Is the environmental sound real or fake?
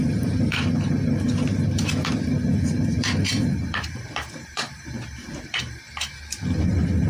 fake